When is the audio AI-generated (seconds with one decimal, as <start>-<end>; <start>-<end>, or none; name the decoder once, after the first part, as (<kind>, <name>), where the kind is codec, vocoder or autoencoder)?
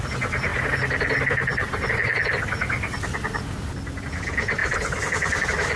none